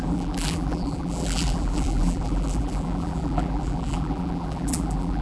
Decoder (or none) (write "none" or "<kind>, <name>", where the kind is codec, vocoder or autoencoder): vocoder, BigVGAN v2